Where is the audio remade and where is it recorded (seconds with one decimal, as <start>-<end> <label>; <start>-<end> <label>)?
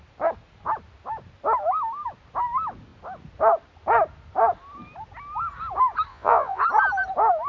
0.0-6.1 recorded; 6.1-6.6 remade; 6.6-7.5 recorded